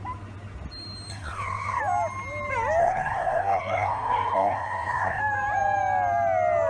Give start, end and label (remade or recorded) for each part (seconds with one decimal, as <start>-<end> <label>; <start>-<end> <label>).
0.0-1.1 recorded; 1.1-1.8 remade; 1.8-2.8 recorded; 2.8-5.2 remade; 5.2-6.7 recorded

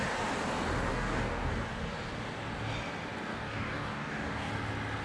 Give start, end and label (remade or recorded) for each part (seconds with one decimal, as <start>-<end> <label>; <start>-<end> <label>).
0.0-0.9 recorded; 0.9-1.5 remade; 1.5-3.3 recorded; 3.3-4.5 remade; 4.5-5.0 recorded

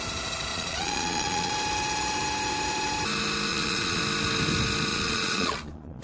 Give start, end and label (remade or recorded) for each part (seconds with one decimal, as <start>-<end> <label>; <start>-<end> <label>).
0.0-0.5 recorded; 0.5-1.5 remade; 1.5-3.5 recorded; 3.5-4.0 remade; 4.0-4.9 recorded; 4.9-6.0 remade